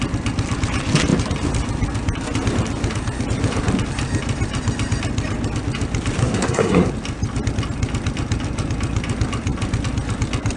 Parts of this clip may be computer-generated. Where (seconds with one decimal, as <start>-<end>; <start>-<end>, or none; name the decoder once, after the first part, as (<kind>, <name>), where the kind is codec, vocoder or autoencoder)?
6.2-6.9 (codec, SNAC)